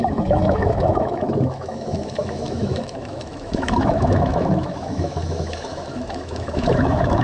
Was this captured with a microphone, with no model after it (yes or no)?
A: no